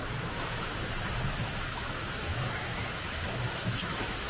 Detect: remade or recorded remade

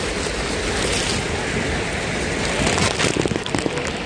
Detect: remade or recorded recorded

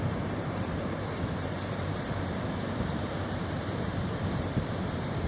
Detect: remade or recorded remade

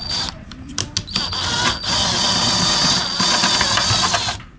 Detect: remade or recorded recorded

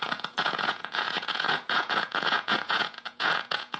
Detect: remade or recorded remade